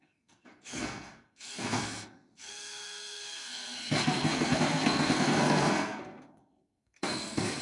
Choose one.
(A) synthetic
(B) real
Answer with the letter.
A